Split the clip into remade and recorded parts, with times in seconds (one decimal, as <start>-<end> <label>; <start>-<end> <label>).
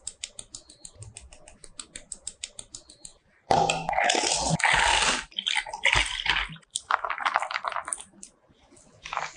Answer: 0.0-9.4 recorded